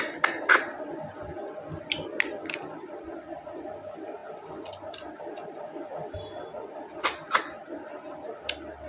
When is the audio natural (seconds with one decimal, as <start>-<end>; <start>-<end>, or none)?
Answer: 0.0-8.9